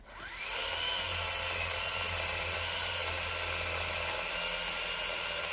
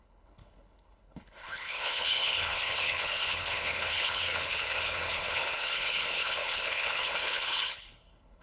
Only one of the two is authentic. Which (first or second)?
first